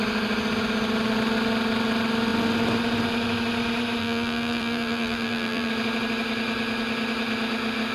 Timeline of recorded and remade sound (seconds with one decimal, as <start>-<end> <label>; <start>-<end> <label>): 0.0-4.0 recorded; 4.0-5.7 remade; 5.7-7.9 recorded